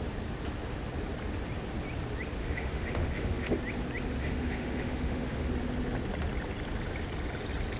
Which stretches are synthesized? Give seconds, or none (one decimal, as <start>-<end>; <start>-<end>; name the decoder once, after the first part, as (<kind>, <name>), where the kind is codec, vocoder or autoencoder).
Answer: 2.4-3.6 (autoencoder, DAC-VAE); 4.2-5.5